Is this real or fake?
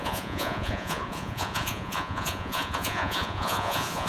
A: fake